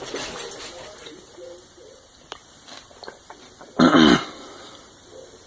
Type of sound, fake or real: real